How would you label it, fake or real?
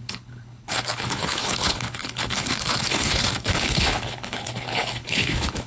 fake